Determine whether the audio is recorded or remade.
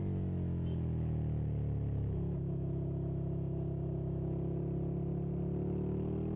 recorded